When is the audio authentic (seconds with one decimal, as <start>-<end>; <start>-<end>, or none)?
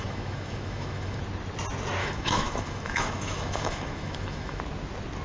1.2-2.0; 4.6-5.2